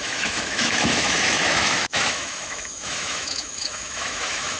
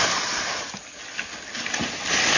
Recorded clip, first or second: second